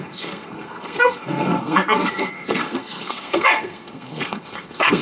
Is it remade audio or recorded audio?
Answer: remade